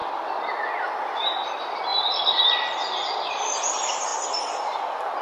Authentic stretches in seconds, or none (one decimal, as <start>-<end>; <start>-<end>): 0.0-1.9; 2.5-4.1; 4.8-5.2